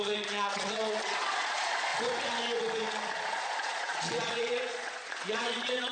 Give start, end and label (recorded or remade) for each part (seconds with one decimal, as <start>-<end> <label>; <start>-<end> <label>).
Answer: 0.0-1.9 remade; 1.9-2.9 recorded; 2.9-5.9 remade